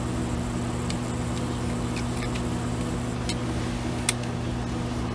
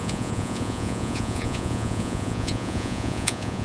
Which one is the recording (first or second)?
first